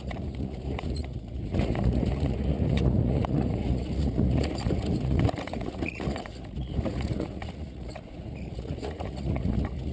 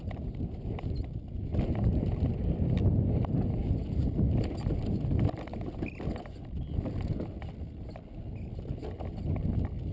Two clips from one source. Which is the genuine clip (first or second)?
second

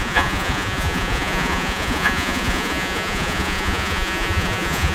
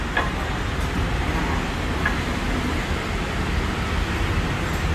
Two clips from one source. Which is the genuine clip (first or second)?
second